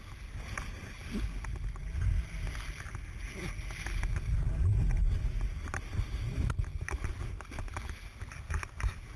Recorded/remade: recorded